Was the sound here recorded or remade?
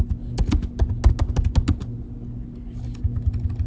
recorded